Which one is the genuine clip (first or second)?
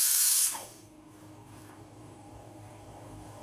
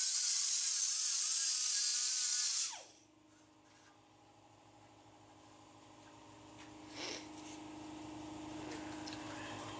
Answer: second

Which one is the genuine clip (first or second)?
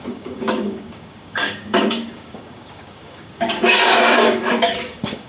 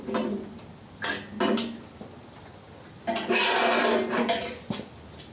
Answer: second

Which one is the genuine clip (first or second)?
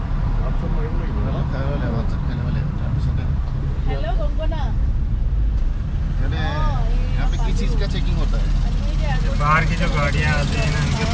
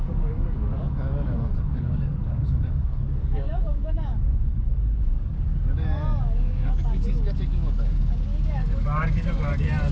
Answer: first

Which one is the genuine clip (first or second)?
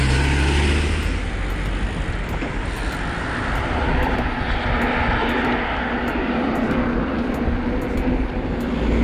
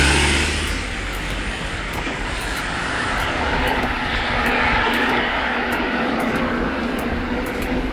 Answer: first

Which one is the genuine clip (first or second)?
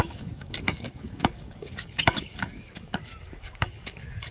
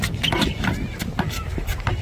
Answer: second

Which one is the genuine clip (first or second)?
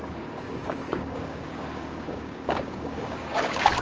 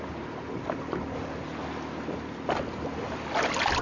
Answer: second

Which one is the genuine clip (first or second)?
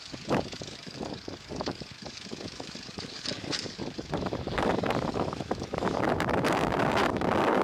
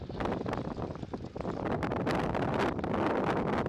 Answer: second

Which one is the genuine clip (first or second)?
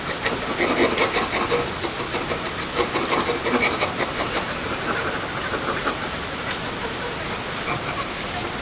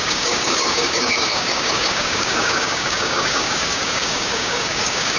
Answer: first